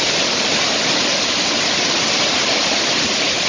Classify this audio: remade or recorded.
recorded